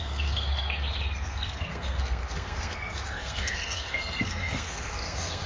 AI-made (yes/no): yes